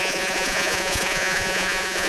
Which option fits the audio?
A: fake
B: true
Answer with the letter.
A